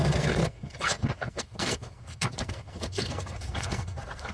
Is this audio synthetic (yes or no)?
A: yes